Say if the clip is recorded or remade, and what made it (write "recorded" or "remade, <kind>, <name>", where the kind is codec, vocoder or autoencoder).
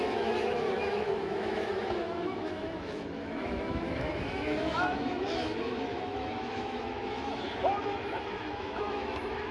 remade, autoencoder, DAC-VAE